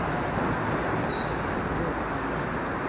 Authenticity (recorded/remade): recorded